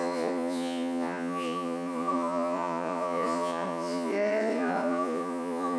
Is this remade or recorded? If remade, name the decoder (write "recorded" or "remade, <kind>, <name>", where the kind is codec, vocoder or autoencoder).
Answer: remade, vocoder, Vocos